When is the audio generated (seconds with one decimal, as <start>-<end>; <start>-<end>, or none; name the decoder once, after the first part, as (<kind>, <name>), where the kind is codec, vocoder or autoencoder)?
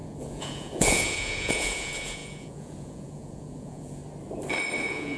0.0-4.0 (vocoder, Vocos); 4.8-5.2